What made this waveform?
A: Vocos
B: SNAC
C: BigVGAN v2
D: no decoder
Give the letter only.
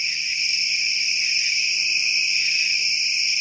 C